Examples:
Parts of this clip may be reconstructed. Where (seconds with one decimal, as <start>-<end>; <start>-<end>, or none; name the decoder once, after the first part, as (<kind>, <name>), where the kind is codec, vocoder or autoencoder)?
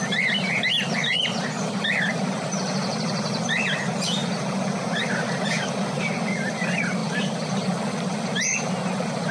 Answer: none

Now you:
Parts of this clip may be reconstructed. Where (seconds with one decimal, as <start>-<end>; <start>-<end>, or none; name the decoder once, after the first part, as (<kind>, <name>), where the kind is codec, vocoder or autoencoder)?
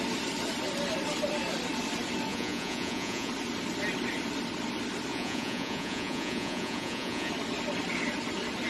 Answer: 2.3-3.3 (vocoder, Vocos); 5.1-7.3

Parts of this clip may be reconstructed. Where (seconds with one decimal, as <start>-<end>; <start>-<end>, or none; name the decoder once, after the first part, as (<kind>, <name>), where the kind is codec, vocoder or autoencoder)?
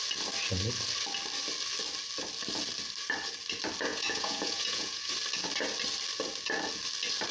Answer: 3.9-5.1 (vocoder, Vocos)